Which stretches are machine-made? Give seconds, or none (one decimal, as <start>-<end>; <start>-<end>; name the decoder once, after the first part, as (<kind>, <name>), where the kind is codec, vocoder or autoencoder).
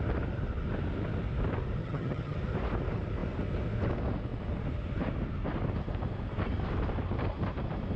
1.8-2.4 (vocoder, HiFi-GAN)